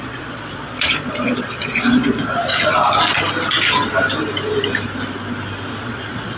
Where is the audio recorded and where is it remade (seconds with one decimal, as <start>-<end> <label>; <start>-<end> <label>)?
0.0-2.5 remade; 2.5-5.7 recorded; 5.7-6.4 remade